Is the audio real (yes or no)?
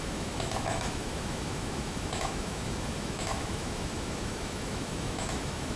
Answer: no